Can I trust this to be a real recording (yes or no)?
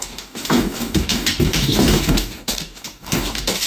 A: no